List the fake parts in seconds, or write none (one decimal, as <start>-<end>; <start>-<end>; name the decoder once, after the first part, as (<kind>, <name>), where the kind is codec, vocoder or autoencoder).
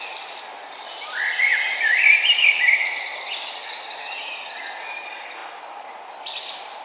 1.5-4.5 (vocoder, BigVGAN v2)